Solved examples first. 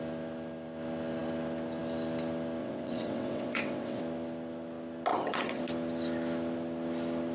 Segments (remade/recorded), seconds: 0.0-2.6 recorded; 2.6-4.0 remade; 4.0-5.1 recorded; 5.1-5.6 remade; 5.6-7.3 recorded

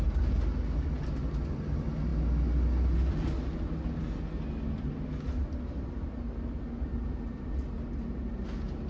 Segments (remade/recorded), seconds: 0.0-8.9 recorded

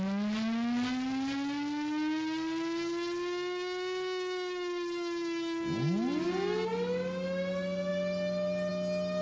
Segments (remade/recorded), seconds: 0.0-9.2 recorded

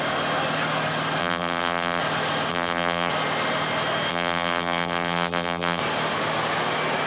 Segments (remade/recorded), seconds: 0.0-1.2 recorded; 1.2-2.0 remade; 2.0-2.5 recorded; 2.5-3.1 remade; 3.1-4.1 recorded; 4.1-5.8 remade; 5.8-7.1 recorded